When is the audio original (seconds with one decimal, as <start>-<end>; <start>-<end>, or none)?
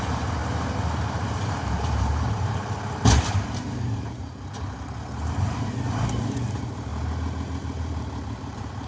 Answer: 0.4-1.3; 6.9-8.2